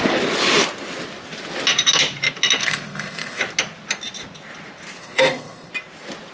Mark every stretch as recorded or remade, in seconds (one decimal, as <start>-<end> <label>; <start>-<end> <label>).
0.0-2.6 recorded; 2.6-3.4 remade; 3.4-5.0 recorded; 5.0-5.7 remade; 5.7-6.3 recorded